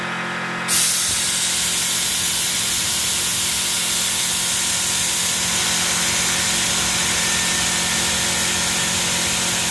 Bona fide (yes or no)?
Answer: yes